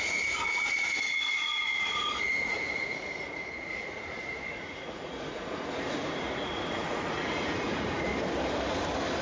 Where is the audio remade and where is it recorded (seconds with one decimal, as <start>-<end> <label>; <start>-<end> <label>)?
0.0-8.1 remade; 8.1-9.2 recorded